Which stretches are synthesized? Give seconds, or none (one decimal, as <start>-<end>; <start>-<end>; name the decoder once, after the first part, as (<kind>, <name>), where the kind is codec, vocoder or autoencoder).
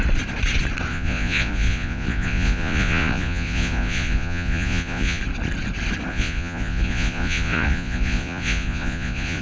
0.9-5.2 (vocoder, Vocos); 6.1-9.4